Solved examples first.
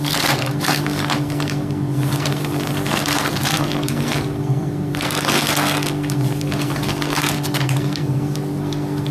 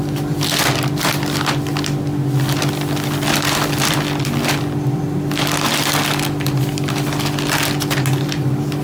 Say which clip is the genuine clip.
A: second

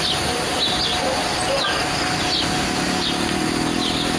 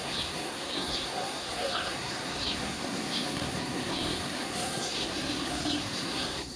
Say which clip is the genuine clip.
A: first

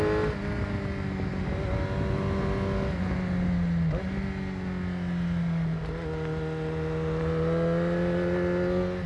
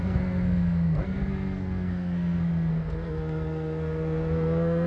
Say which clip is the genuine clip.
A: first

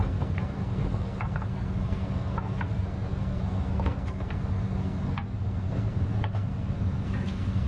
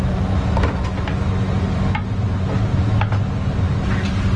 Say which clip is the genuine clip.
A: second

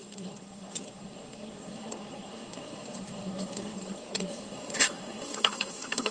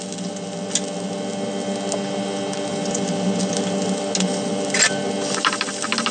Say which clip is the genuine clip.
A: second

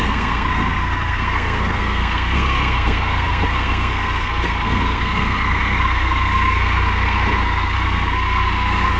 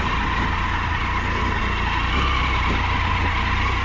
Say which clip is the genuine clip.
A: second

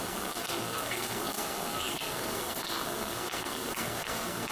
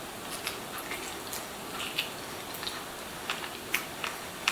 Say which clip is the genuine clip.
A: second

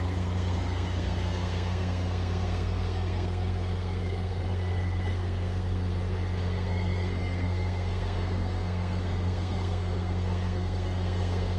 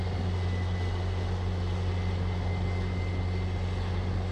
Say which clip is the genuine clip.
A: second